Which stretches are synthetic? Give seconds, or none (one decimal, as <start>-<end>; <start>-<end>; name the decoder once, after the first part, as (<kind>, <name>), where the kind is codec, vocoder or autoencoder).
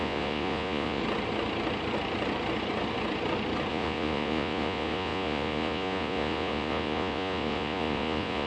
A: 0.0-1.0 (vocoder, Vocos); 3.7-8.5